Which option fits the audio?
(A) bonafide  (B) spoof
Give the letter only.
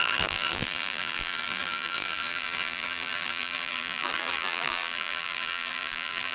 B